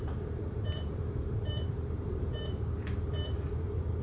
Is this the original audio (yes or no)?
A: no